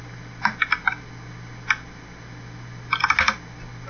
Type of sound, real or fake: real